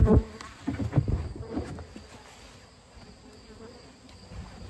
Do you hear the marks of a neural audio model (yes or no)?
no